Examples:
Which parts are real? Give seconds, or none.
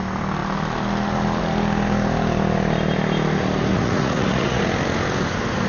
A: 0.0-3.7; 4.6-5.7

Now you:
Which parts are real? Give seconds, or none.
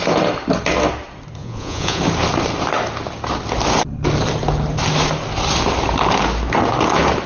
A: 0.0-1.4; 2.0-7.3